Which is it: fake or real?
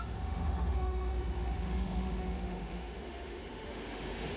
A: fake